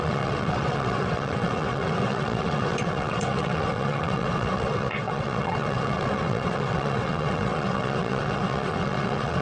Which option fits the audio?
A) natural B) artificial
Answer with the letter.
B